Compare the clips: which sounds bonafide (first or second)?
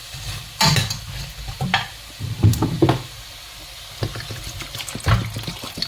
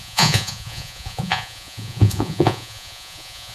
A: first